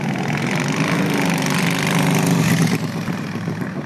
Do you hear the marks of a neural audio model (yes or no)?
no